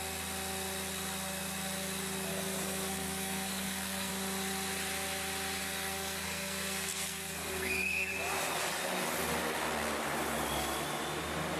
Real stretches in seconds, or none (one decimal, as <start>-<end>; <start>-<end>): 0.0-2.3; 4.1-5.6; 8.1-11.6